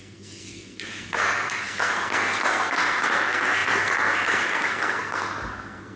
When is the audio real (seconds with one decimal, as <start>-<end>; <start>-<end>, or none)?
none